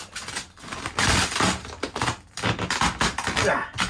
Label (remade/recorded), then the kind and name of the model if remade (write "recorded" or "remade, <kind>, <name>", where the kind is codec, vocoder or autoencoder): recorded